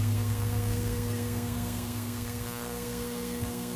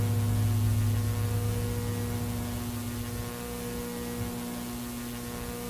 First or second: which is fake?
first